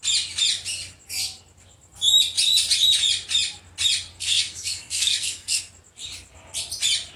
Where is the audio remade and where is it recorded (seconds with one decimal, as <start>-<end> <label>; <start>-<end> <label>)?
0.0-4.1 recorded; 4.1-5.6 remade; 5.6-7.2 recorded